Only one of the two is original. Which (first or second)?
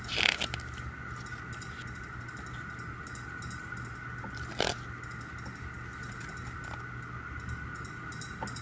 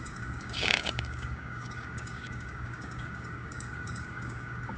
first